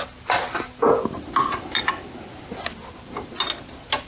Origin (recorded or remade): recorded